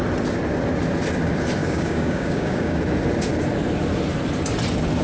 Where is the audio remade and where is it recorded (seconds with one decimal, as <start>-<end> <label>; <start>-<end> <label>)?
0.0-1.6 recorded; 1.6-2.8 remade; 2.8-5.0 recorded